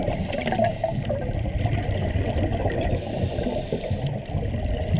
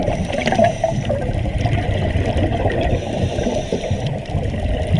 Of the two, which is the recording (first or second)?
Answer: first